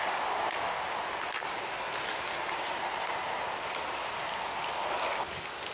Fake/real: real